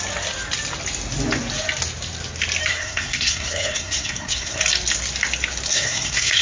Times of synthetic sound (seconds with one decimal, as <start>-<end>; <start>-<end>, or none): 2.7-4.6; 5.7-6.4